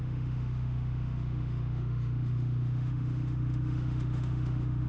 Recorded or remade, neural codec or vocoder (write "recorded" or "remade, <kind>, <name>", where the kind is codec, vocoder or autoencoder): remade, autoencoder, DAC-VAE